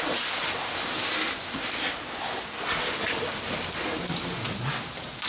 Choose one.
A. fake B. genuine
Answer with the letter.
B